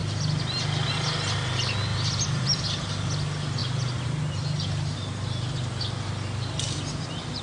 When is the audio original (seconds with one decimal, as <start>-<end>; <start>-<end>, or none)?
0.0-1.9; 2.6-7.4